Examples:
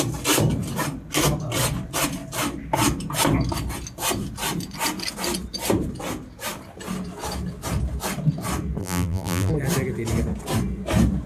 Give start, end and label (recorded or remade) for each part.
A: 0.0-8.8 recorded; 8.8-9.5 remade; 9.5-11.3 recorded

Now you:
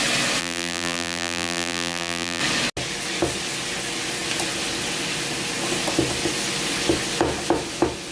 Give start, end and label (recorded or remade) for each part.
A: 0.0-0.4 recorded; 0.4-2.4 remade; 2.4-8.1 recorded

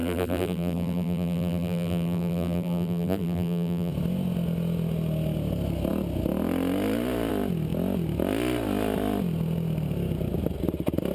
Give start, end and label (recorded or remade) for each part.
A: 0.0-3.9 remade; 3.9-11.1 recorded

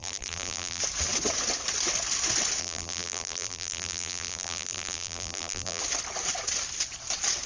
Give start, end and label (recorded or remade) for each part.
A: 0.0-0.8 remade; 0.8-2.6 recorded; 2.6-5.8 remade; 5.8-7.5 recorded

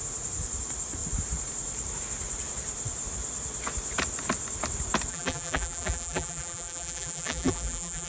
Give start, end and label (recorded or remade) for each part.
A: 0.0-5.1 recorded; 5.1-8.1 remade

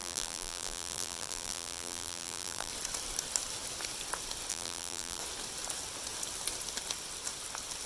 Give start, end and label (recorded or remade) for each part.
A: 0.0-2.7 remade; 2.7-4.5 recorded; 4.5-5.2 remade; 5.2-7.9 recorded